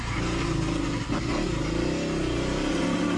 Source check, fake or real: real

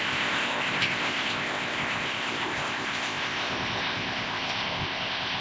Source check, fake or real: fake